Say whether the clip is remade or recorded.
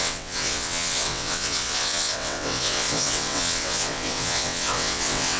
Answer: remade